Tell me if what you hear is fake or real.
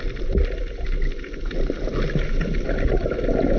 real